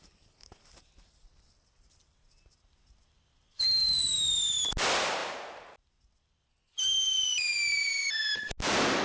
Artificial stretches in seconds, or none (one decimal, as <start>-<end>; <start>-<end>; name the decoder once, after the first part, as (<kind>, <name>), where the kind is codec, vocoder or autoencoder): none